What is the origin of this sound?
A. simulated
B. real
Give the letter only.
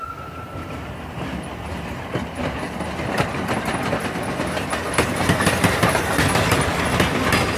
B